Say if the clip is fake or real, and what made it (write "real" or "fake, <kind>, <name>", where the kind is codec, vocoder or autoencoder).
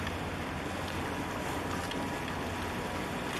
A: real